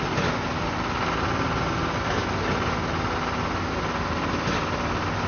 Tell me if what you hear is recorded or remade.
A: recorded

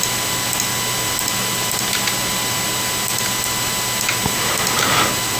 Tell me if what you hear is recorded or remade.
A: recorded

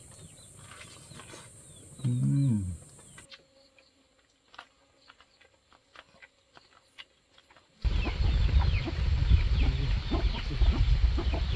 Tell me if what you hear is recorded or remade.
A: recorded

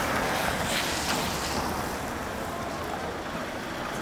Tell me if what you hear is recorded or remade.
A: recorded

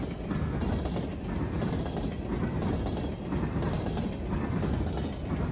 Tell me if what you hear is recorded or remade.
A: recorded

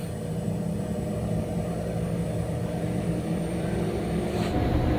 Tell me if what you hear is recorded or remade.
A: remade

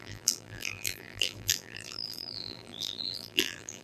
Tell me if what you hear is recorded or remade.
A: remade